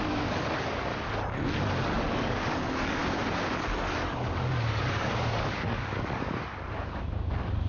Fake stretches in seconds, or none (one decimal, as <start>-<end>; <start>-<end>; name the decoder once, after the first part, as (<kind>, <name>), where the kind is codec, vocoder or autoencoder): 0.0-0.9 (codec, DAC); 1.8-3.0; 4.1-7.7